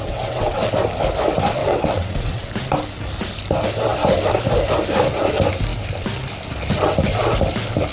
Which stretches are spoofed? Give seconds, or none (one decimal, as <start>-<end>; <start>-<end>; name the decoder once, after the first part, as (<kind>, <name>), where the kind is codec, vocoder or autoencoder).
0.0-0.7 (vocoder, WaveNeXt); 1.6-2.5